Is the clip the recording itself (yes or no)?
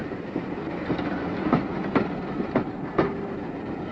yes